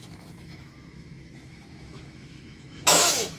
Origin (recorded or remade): remade